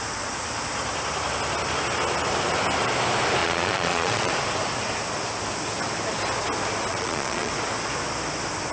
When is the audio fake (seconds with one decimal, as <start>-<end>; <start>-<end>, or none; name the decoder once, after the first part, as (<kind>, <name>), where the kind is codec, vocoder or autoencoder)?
3.4-4.3 (vocoder, Vocos); 6.9-7.5